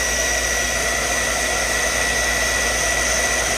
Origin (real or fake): real